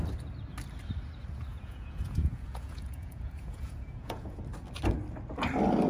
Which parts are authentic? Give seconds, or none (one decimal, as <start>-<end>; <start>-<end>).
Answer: 0.0-1.5; 4.4-5.9